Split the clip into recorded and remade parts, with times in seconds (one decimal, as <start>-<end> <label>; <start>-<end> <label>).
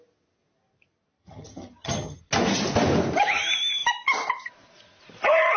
0.0-1.2 recorded; 1.2-2.2 remade; 2.2-5.6 recorded